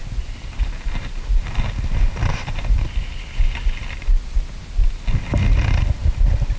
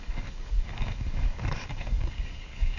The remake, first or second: second